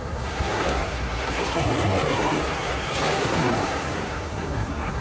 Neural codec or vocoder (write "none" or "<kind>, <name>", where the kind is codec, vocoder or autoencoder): codec, SNAC